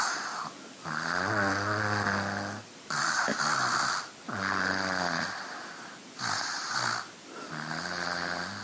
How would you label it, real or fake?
real